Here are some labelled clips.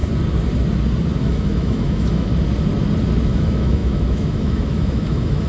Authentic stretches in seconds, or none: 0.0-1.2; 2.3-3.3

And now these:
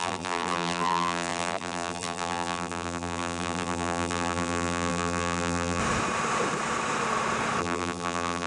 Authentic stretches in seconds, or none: 5.8-7.6

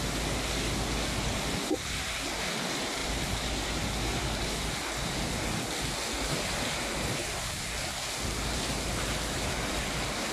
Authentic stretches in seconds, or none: 0.0-10.3

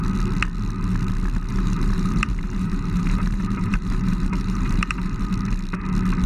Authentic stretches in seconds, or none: 0.0-1.5; 5.3-6.3

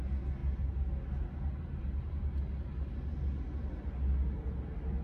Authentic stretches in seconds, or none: 0.0-5.0

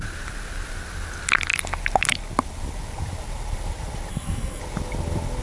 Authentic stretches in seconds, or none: 0.0-4.1; 4.6-5.4

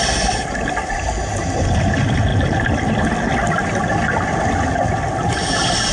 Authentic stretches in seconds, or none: 0.0-5.9

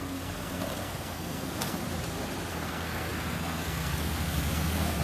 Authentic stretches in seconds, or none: 1.8-2.5